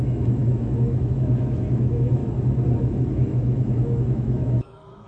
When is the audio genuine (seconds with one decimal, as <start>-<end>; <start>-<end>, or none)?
2.2-2.8